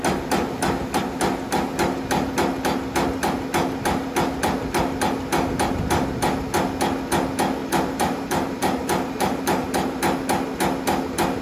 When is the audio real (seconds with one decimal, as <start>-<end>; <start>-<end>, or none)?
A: 0.0-7.6; 10.0-11.4